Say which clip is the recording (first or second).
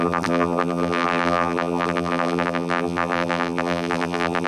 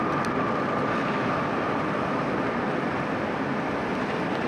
second